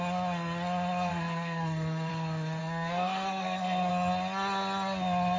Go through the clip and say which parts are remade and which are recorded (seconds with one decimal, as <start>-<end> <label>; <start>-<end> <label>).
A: 0.0-1.1 recorded; 1.1-2.1 remade; 2.1-2.6 recorded; 2.6-3.9 remade; 3.9-5.4 recorded